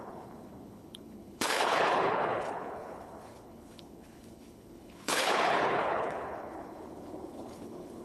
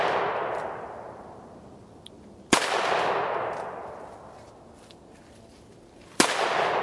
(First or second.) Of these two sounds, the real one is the second